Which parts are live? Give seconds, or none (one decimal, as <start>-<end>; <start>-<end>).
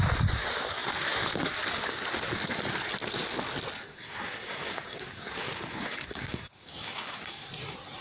0.0-3.8; 7.5-8.0